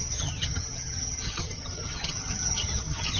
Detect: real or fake fake